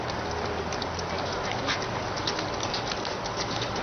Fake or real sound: real